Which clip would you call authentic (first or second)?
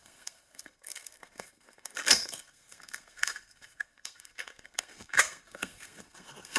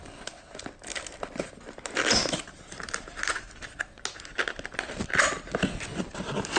second